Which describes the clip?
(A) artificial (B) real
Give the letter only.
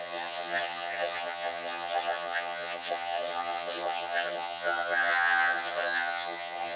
A